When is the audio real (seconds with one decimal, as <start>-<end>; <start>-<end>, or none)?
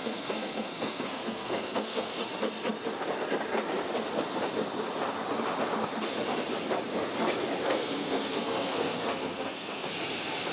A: 2.2-7.6; 9.9-10.5